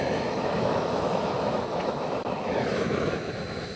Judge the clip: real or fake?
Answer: fake